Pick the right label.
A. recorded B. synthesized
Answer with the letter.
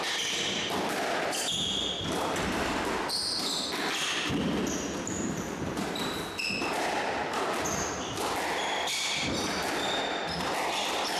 A